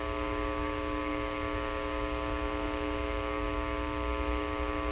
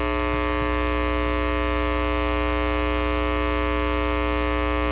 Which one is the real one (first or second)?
second